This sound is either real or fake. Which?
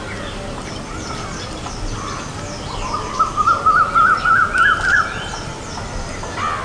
real